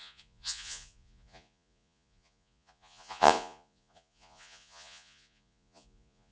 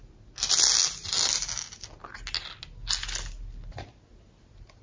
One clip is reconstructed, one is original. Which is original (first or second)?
second